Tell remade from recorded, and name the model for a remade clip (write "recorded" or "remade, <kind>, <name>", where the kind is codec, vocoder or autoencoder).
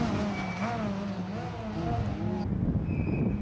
recorded